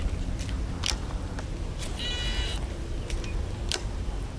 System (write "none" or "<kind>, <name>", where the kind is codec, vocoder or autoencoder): vocoder, BigVGAN v2